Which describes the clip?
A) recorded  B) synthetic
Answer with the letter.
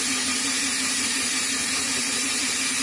B